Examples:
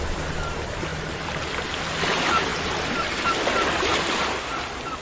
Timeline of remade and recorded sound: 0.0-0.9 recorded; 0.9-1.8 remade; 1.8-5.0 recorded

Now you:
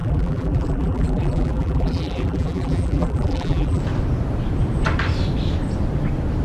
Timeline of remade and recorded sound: 0.0-3.8 remade; 3.8-6.4 recorded

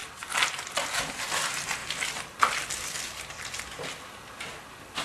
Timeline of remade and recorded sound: 0.0-5.0 recorded

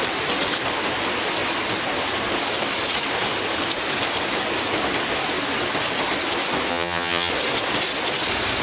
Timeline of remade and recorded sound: 0.0-6.7 recorded; 6.7-7.3 remade; 7.3-8.6 recorded

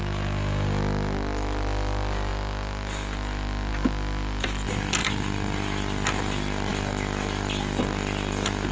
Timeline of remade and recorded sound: 0.0-8.7 recorded

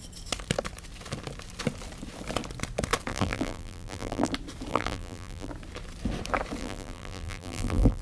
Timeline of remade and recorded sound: 0.0-3.1 recorded; 3.1-4.3 remade; 4.3-4.7 recorded; 4.7-5.5 remade; 5.5-6.6 recorded; 6.6-8.0 remade